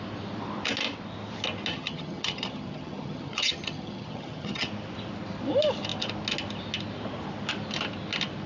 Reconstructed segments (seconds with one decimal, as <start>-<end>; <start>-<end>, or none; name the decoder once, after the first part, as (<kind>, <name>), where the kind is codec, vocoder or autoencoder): 1.7-4.7 (vocoder, HiFi-GAN)